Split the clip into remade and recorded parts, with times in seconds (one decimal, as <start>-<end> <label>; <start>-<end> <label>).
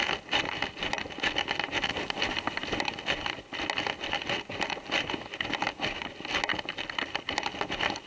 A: 0.0-8.1 recorded